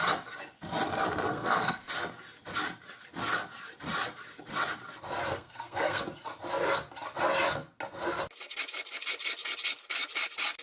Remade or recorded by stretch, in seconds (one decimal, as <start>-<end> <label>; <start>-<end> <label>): 0.0-1.3 recorded; 1.3-1.9 remade; 1.9-5.3 recorded; 5.3-6.0 remade; 6.0-10.6 recorded